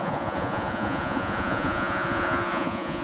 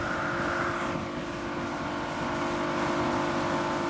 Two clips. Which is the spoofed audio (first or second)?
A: first